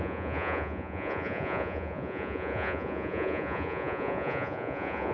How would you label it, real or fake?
fake